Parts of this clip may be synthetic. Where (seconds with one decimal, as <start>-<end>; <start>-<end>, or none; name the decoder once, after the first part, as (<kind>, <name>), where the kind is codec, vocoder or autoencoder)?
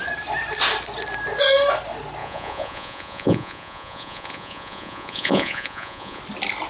2.2-6.2 (vocoder, Vocos)